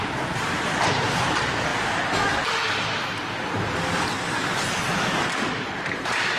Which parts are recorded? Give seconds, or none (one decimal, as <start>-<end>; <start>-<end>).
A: 1.7-5.5

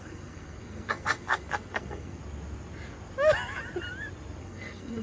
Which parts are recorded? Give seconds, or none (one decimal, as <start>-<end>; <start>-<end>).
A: 2.2-4.4